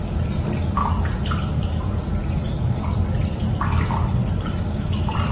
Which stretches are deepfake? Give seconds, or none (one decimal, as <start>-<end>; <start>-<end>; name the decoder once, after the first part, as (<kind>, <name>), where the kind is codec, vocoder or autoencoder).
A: 0.8-1.8 (vocoder, BigVGAN v2); 2.2-3.0